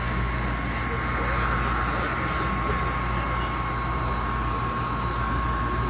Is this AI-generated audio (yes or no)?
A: no